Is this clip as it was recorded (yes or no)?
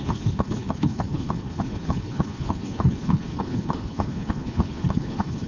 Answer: no